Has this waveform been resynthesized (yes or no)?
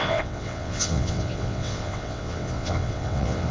yes